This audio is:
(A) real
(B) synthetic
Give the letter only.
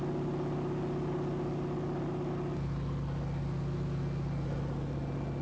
A